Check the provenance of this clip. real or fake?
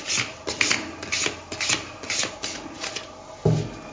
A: real